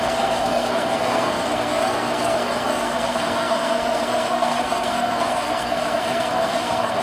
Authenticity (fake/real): fake